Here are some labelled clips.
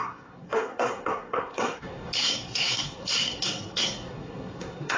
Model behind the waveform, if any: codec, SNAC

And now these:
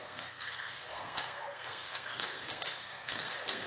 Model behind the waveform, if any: codec, SNAC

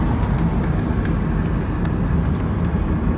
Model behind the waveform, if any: none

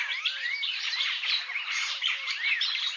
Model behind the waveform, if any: vocoder, BigVGAN v2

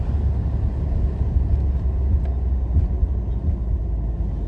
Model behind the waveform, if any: none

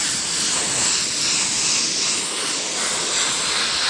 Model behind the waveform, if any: none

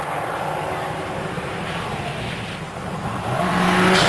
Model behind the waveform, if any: none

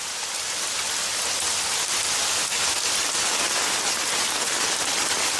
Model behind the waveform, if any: none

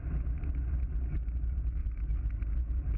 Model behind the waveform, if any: none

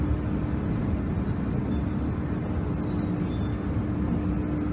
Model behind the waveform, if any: none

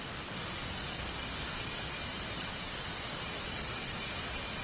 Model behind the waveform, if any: none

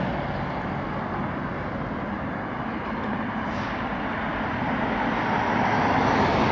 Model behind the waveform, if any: none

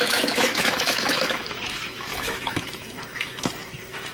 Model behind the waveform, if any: autoencoder, DAC-VAE